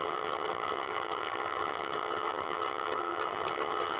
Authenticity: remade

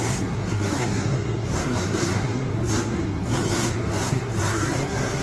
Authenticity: remade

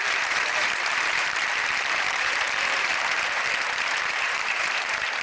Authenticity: remade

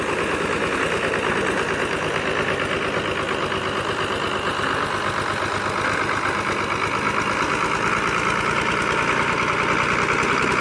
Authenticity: recorded